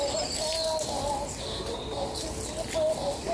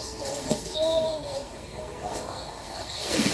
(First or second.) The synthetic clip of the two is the second